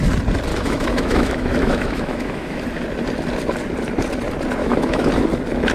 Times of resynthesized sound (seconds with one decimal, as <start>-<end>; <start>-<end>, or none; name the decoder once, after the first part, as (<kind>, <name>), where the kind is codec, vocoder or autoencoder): 0.5-2.6 (autoencoder, DAC-VAE); 4.6-5.1

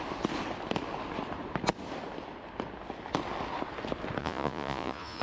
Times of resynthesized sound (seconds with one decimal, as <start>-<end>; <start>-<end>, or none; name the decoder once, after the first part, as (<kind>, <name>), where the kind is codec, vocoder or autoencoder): 4.2-5.2 (vocoder, Vocos)

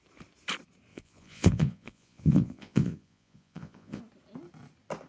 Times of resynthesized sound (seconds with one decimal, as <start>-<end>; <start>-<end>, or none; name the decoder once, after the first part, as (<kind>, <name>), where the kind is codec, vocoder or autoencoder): 0.9-4.0 (vocoder, Vocos)

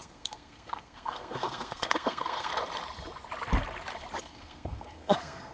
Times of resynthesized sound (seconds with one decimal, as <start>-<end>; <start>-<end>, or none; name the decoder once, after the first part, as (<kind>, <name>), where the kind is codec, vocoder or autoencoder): 0.0-2.5 (codec, SNAC); 4.2-5.5

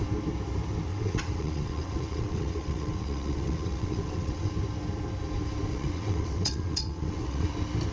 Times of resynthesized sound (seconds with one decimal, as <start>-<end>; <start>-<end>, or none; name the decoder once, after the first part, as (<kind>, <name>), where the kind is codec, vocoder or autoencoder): 0.9-4.5 (vocoder, WaveNeXt); 5.7-7.5

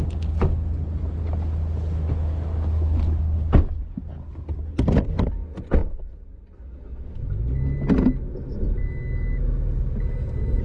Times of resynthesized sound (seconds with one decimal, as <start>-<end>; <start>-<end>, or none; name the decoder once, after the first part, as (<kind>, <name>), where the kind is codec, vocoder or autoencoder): none

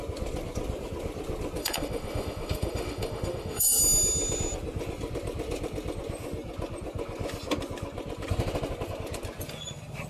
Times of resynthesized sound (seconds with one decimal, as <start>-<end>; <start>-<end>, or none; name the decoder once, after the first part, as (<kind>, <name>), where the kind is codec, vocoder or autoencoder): 1.6-3.8 (autoencoder, DAC-VAE)